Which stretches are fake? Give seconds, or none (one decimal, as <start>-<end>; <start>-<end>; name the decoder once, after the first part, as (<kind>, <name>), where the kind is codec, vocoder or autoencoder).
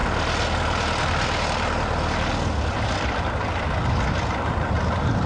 none